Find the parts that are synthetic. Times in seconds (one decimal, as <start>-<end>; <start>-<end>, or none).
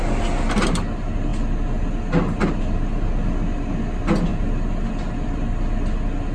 none